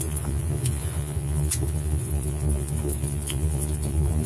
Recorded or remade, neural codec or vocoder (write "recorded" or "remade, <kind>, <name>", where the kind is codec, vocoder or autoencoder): remade, vocoder, Vocos